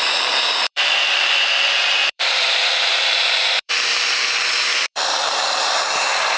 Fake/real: fake